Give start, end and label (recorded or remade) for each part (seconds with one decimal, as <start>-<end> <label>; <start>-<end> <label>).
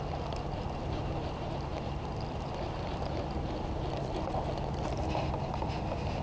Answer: 0.0-6.2 recorded